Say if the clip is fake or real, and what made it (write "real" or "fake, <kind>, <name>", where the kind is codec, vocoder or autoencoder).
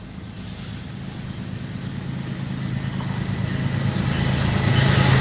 real